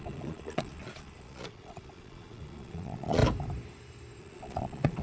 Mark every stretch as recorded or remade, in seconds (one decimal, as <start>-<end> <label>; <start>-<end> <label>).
0.0-3.2 remade; 3.2-4.2 recorded; 4.2-5.0 remade